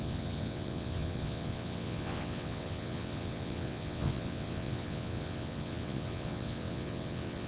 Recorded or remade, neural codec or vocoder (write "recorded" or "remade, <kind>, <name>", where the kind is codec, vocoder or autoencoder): remade, vocoder, WaveNeXt